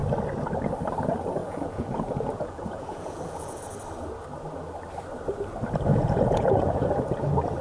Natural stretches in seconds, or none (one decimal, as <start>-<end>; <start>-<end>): 0.0-1.4; 3.6-5.9; 6.9-7.6